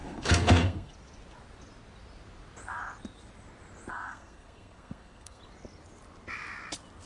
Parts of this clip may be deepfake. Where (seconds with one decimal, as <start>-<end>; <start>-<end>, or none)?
0.0-0.9; 3.9-5.4